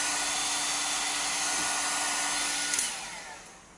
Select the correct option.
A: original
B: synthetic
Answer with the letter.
A